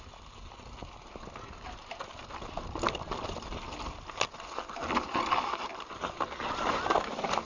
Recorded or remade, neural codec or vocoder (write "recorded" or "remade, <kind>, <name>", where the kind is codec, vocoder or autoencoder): recorded